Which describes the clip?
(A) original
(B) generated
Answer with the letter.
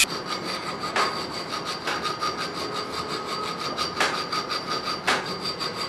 A